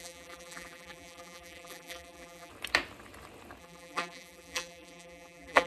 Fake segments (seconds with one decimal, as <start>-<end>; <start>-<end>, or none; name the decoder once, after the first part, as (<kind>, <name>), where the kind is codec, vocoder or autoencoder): 0.0-2.5 (vocoder, BigVGAN v2); 3.6-5.7